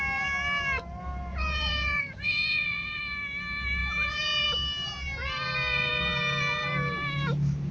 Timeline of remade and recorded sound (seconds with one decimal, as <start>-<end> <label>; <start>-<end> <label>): 0.0-1.3 recorded; 1.3-3.0 remade; 3.0-7.7 recorded